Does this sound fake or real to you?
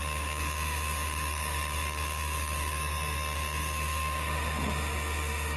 fake